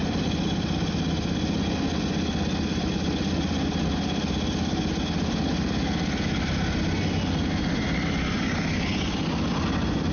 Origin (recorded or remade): recorded